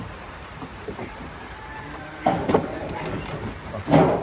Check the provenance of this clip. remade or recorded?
remade